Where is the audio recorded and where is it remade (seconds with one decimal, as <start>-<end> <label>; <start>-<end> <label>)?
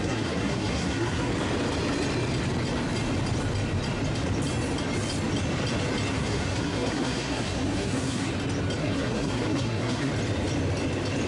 0.0-1.3 remade; 1.3-6.1 recorded; 6.1-8.3 remade; 8.3-8.8 recorded; 8.8-10.1 remade; 10.1-11.3 recorded